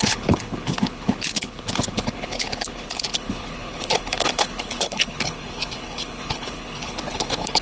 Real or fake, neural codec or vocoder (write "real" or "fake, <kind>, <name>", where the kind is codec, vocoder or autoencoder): fake, codec, HILCodec